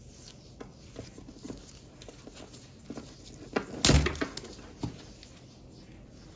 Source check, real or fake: real